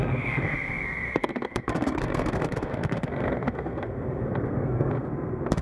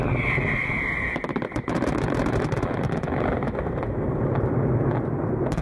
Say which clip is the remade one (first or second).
first